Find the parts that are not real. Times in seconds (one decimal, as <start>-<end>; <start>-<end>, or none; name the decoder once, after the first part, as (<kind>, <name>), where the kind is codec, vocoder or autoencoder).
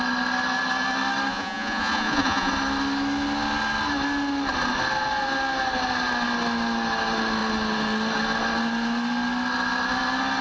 1.3-2.5 (vocoder, Vocos)